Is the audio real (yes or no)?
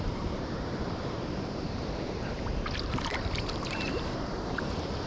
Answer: no